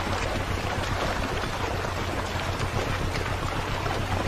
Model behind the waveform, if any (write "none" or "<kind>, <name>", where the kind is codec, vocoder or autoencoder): none